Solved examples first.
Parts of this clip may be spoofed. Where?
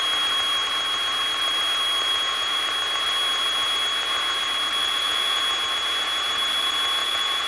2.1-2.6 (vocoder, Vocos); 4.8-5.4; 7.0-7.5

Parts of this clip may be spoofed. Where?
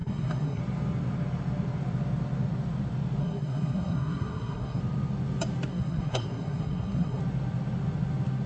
0.0-0.6 (codec, SNAC); 3.2-4.8; 5.7-7.2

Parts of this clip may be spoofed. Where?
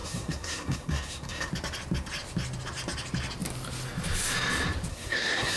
0.0-1.5 (codec, SNAC); 4.9-5.6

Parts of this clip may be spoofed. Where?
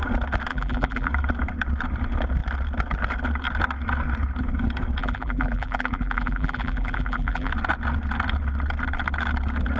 0.5-1.1 (vocoder, BigVGAN v2); 5.0-7.5